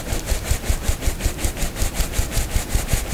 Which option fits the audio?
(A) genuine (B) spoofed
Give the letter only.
A